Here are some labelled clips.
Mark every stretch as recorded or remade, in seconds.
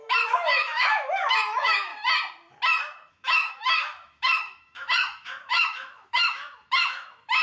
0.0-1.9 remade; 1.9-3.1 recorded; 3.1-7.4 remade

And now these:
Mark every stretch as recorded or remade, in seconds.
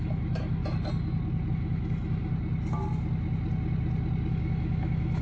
0.0-0.6 remade; 0.6-1.5 recorded; 1.5-2.3 remade; 2.3-4.3 recorded; 4.3-5.2 remade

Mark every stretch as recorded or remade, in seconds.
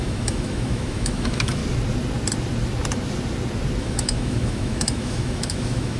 0.0-1.6 remade; 1.6-3.8 recorded; 3.8-6.0 remade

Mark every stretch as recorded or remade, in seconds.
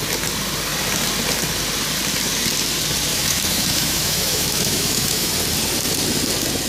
0.0-3.1 recorded; 3.1-5.3 remade; 5.3-6.7 recorded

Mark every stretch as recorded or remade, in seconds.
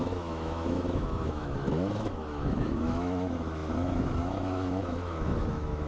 0.0-5.9 remade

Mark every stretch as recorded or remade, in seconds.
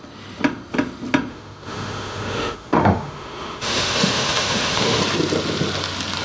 0.0-1.3 recorded; 1.3-5.0 remade; 5.0-6.2 recorded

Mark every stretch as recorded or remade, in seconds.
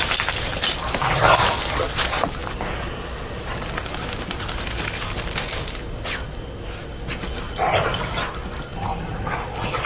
0.0-9.9 recorded